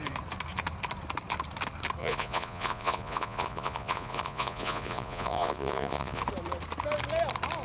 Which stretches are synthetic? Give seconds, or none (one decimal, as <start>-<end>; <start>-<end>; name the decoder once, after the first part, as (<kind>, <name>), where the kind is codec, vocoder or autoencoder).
2.0-6.2 (vocoder, Vocos)